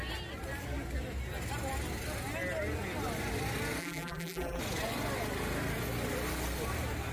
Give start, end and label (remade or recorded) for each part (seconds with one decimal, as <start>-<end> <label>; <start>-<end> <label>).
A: 0.0-3.8 recorded; 3.8-4.6 remade; 4.6-7.1 recorded